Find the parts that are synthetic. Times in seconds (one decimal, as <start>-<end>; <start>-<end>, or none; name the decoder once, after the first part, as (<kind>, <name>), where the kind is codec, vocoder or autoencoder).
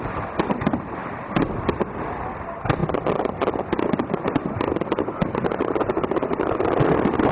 none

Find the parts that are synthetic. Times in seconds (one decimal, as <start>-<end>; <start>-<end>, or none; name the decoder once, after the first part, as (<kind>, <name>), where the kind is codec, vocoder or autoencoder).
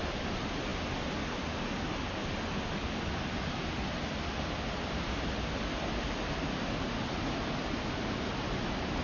none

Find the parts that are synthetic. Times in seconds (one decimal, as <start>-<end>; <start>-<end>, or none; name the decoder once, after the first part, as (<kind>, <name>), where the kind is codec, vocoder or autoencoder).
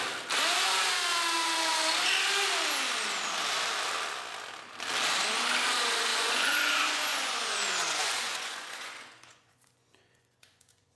6.1-11.0 (vocoder, Vocos)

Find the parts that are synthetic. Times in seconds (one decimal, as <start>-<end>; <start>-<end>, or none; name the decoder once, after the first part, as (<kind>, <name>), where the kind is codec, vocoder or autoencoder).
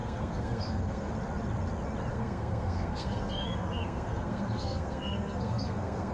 0.0-1.1 (codec, SNAC); 2.1-6.1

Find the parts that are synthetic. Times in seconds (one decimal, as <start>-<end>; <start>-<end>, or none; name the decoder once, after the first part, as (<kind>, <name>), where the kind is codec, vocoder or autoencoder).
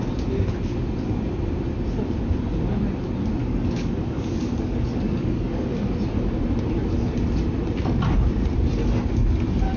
3.4-5.9 (codec, DAC)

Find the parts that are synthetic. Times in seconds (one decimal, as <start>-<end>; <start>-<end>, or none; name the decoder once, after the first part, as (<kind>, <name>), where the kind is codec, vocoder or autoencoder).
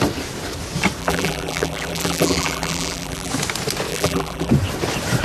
1.0-3.3 (vocoder, BigVGAN v2); 3.9-4.5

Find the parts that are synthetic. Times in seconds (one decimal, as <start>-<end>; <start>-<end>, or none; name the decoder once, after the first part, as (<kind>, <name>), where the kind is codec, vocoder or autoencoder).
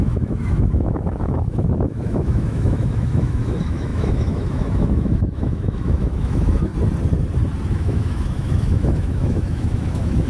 0.0-6.7 (autoencoder, DAC-VAE); 7.7-10.3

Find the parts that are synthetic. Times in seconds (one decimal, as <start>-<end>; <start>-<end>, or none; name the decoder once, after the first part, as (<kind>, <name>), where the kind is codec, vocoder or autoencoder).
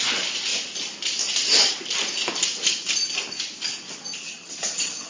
4.2-5.1 (vocoder, HiFi-GAN)